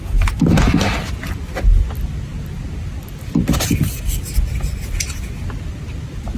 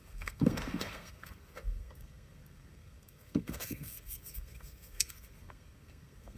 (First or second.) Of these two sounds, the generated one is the second